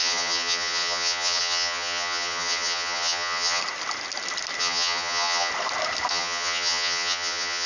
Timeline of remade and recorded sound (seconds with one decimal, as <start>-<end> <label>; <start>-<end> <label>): 0.0-3.6 remade; 3.6-4.6 recorded; 4.6-5.5 remade; 5.5-6.1 recorded; 6.1-7.7 remade